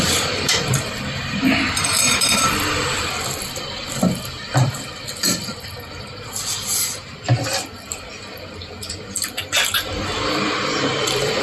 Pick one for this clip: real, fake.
fake